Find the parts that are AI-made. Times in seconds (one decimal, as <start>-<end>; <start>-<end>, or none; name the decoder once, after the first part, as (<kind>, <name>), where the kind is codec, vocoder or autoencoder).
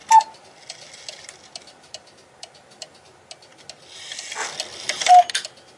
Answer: none